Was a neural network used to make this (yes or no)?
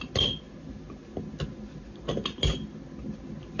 no